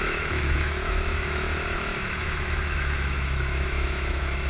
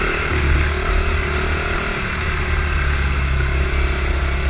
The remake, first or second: first